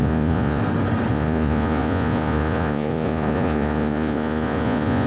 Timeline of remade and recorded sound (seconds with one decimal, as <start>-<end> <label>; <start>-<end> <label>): 0.0-0.6 remade; 0.6-1.1 recorded; 1.1-5.1 remade